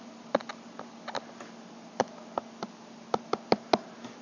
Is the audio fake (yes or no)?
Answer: no